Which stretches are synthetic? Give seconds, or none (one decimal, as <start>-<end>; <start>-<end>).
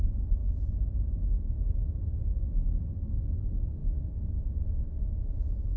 none